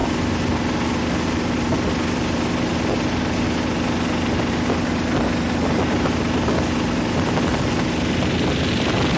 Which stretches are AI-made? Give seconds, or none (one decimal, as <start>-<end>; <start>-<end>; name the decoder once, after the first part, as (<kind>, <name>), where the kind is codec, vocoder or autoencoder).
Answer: none